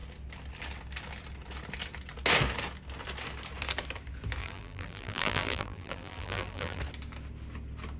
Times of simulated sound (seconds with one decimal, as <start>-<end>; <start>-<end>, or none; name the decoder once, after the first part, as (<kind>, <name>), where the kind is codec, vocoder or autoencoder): 4.4-6.8 (vocoder, BigVGAN v2)